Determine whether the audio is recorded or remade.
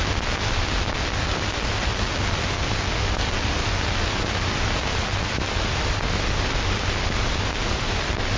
recorded